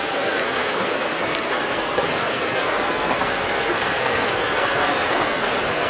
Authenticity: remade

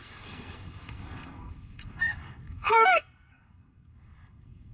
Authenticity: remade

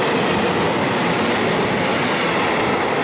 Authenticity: recorded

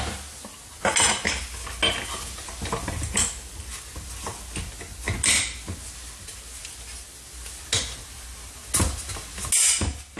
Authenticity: recorded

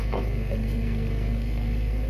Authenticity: remade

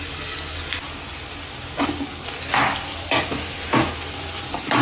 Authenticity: recorded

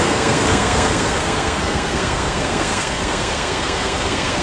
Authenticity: remade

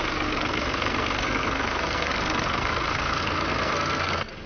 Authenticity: remade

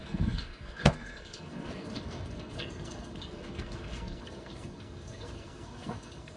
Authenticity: remade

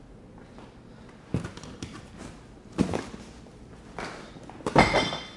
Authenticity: recorded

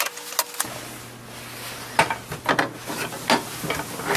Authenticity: recorded